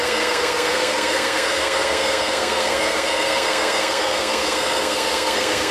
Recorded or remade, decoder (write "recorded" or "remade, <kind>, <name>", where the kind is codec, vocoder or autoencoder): remade, codec, SNAC